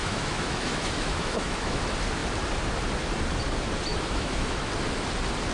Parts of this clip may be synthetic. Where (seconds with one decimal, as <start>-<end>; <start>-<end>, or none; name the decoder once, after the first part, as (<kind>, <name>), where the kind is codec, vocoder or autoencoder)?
0.0-1.8 (autoencoder, DAC-VAE); 3.9-4.7